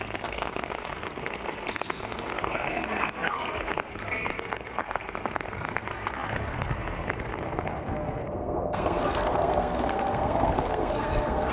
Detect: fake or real fake